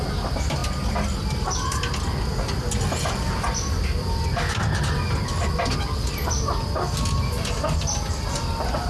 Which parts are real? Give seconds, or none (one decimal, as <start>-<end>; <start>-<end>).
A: 0.0-8.9